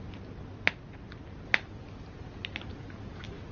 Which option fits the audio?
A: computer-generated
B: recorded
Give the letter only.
B